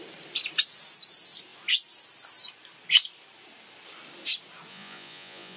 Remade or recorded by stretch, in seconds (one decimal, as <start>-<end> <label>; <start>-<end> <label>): 0.0-4.7 recorded; 4.7-5.6 remade